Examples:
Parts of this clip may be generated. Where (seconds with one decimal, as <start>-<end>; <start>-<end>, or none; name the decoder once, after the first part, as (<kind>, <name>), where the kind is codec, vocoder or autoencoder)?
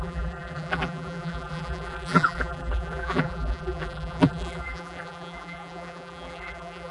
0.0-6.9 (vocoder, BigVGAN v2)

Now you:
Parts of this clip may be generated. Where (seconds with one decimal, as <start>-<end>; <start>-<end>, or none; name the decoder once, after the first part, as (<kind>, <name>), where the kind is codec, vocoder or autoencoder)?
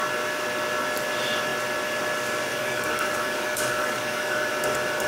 2.5-4.5 (codec, DAC)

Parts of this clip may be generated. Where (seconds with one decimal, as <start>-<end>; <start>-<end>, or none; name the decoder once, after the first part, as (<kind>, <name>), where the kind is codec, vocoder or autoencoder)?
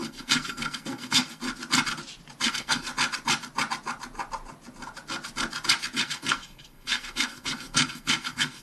0.0-1.4 (codec, SNAC); 2.5-2.9; 6.0-8.6